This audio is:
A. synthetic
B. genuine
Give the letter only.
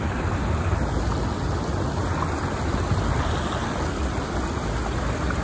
B